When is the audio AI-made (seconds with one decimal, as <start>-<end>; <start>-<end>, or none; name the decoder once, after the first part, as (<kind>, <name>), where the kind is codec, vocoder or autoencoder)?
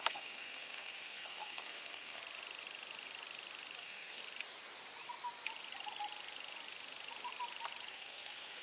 0.0-2.2 (codec, SNAC); 3.8-4.2; 7.9-8.6